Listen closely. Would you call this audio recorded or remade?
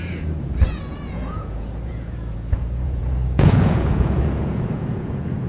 remade